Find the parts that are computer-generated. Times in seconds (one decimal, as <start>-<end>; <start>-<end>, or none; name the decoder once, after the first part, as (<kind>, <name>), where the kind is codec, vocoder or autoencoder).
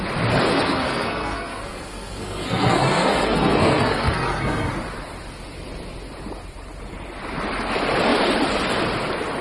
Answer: 0.5-4.7 (codec, SNAC)